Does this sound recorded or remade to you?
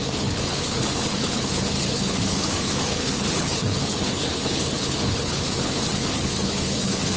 remade